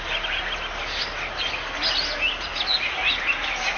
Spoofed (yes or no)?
no